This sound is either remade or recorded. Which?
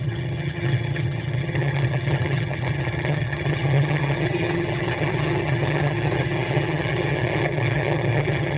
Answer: remade